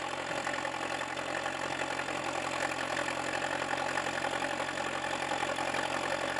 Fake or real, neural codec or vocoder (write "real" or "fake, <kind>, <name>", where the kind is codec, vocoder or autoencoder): real